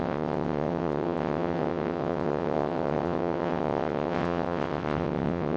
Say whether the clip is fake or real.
fake